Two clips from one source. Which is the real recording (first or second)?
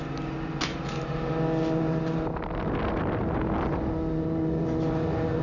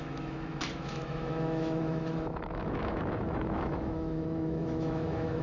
first